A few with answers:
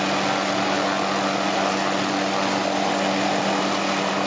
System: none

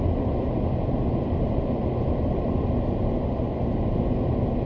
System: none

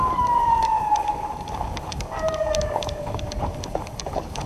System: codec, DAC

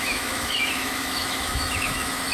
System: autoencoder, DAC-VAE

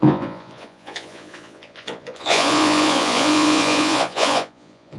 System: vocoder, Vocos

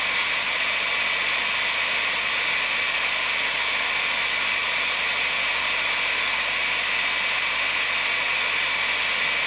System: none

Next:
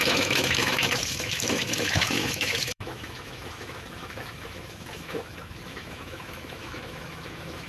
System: autoencoder, DAC-VAE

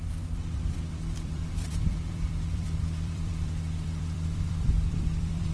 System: vocoder, BigVGAN v2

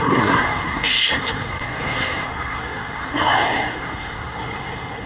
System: codec, SNAC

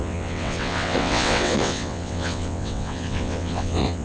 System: vocoder, WaveNeXt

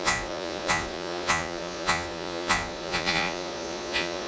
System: vocoder, Vocos